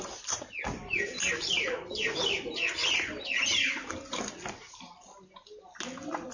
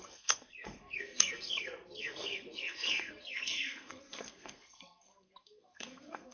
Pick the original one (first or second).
first